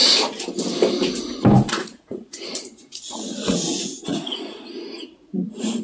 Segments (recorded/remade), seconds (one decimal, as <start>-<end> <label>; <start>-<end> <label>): 0.0-1.7 recorded; 1.7-5.8 remade